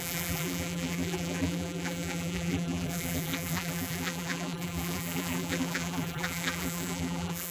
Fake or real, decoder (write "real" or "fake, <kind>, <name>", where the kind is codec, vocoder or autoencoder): fake, vocoder, BigVGAN v2